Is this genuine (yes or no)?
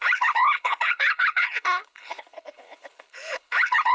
no